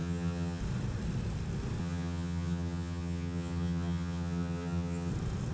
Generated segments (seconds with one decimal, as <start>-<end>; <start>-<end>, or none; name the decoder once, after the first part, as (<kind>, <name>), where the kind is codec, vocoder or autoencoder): 0.0-0.6 (vocoder, HiFi-GAN); 1.8-5.1